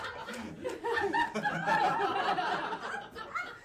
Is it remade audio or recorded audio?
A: recorded